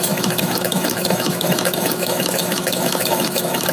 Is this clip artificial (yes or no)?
yes